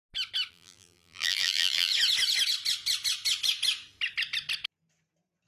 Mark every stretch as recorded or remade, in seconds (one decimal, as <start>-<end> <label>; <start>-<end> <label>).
0.0-0.5 recorded; 0.5-1.9 remade; 1.9-5.5 recorded